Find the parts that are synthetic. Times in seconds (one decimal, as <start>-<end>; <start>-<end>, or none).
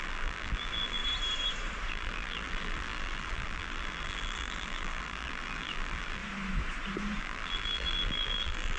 0.0-1.0; 1.9-6.2; 7.2-8.8